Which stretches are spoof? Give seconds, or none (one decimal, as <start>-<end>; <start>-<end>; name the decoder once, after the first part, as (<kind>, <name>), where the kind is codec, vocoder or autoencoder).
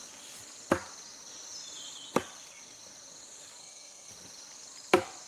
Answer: 3.6-4.1 (codec, SNAC)